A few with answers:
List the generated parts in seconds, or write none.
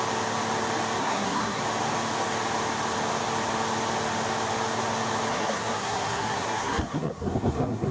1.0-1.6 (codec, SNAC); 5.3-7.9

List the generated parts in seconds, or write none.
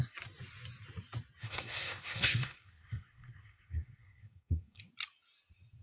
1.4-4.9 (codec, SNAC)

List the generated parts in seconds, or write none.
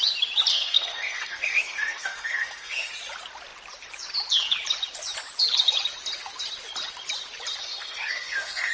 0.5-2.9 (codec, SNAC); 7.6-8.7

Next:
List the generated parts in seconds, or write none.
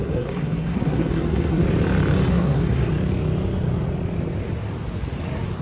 0.0-1.6 (codec, SNAC); 2.3-2.9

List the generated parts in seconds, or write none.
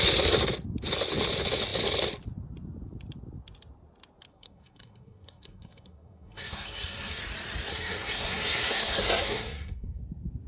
4.3-7.2 (codec, SNAC); 7.7-10.0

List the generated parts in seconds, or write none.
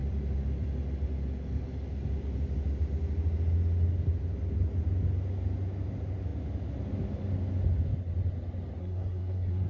8.8-9.7 (codec, SNAC)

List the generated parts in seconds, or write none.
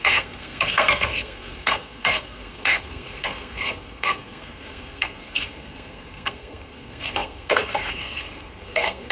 0.0-9.1 (codec, SNAC)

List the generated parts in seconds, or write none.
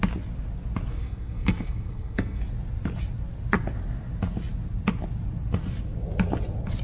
0.9-2.4 (codec, SNAC)